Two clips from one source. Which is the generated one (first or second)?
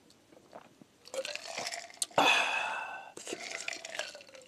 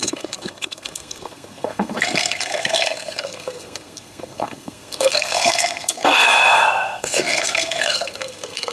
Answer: second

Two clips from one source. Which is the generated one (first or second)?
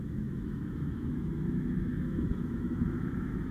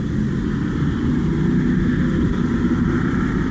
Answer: first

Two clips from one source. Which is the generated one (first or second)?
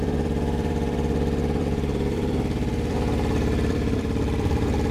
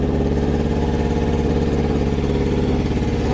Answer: first